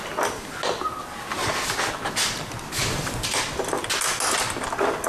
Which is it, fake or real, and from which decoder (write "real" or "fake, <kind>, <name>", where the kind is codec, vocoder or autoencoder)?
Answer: real